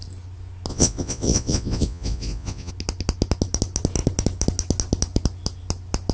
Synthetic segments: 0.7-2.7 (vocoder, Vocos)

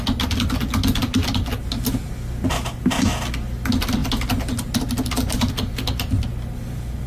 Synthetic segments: none

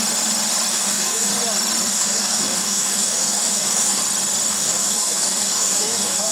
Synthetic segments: 0.7-1.3 (codec, DAC); 1.9-4.0; 4.5-6.3